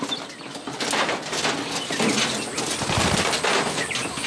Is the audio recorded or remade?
recorded